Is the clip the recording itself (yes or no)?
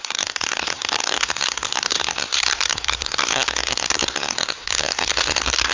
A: no